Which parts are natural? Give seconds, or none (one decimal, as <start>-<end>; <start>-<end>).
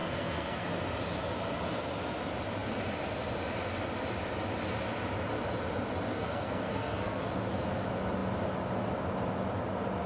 0.7-6.1; 7.3-10.1